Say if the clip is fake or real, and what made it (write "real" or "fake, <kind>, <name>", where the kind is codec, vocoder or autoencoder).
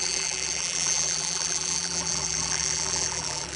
fake, vocoder, BigVGAN v2